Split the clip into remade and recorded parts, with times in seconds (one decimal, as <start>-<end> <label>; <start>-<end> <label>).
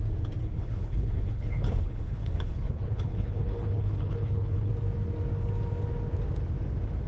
0.0-0.4 recorded; 0.4-4.7 remade; 4.7-7.1 recorded